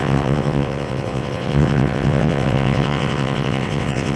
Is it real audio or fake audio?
fake